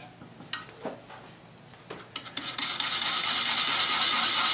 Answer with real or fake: real